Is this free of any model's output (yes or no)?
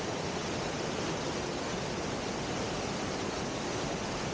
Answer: yes